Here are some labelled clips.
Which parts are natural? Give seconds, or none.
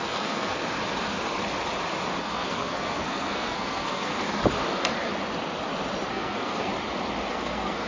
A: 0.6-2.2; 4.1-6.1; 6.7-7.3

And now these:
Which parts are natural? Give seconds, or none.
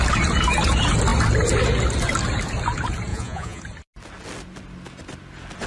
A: 0.0-3.1; 3.6-5.7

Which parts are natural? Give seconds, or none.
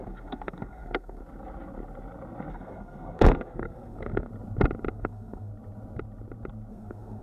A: 1.2-2.5; 4.3-4.9; 5.5-6.7